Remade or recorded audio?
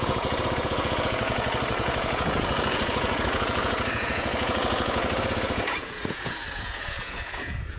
remade